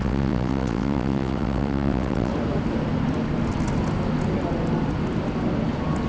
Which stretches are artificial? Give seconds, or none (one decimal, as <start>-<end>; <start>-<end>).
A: 0.0-2.3